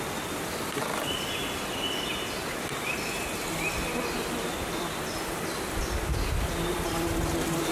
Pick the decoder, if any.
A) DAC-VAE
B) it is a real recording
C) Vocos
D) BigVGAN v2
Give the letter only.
B